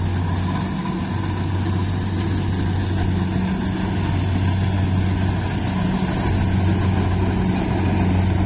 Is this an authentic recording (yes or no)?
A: yes